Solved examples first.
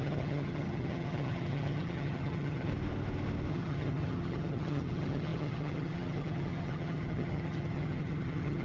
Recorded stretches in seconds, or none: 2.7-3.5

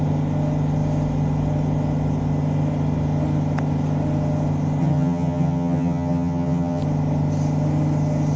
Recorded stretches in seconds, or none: 0.0-4.8; 6.8-8.4

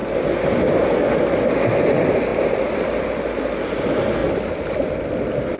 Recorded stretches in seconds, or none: 0.0-5.6